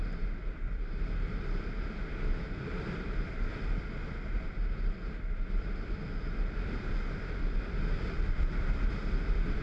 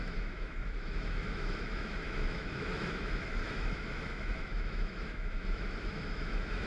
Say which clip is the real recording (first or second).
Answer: first